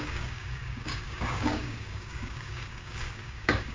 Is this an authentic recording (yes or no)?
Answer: no